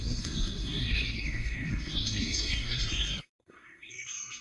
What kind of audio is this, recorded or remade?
remade